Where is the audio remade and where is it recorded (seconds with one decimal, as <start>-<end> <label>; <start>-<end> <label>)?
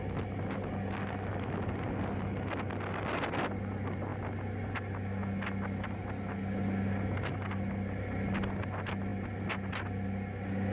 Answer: 0.0-10.7 recorded